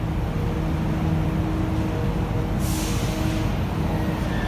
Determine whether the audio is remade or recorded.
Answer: recorded